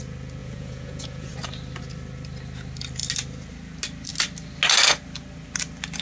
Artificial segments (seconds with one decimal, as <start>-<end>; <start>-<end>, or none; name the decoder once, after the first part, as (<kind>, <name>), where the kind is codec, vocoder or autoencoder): 0.4-1.3 (vocoder, Vocos)